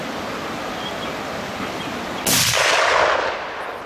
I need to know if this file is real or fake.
real